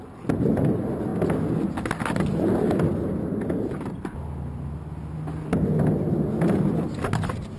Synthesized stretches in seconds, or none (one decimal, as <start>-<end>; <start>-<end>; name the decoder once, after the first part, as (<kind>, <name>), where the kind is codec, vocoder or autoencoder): none